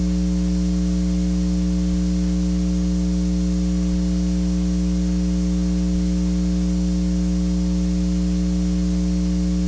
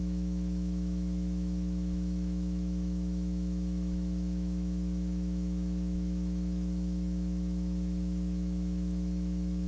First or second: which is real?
first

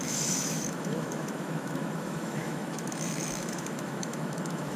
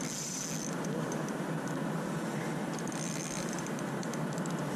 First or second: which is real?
second